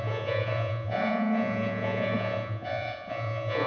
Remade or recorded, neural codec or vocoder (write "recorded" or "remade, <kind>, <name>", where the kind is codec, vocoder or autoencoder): remade, vocoder, Vocos